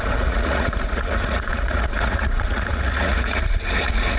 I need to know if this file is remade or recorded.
remade